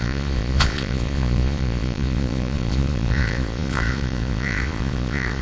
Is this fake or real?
fake